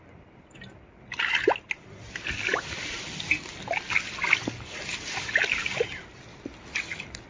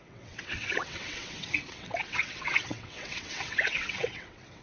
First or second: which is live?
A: first